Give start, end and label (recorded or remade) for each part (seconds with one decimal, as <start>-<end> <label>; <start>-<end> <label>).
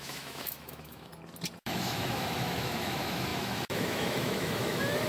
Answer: 0.0-1.1 remade; 1.1-1.6 recorded; 1.6-5.1 remade